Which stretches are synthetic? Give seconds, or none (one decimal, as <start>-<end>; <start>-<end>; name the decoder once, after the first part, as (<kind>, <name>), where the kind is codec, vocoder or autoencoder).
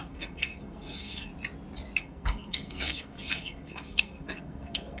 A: 0.0-1.3 (codec, SNAC); 2.0-5.0